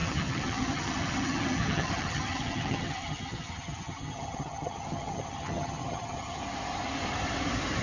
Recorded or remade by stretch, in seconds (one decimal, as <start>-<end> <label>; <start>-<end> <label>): 0.0-6.4 remade; 6.4-7.8 recorded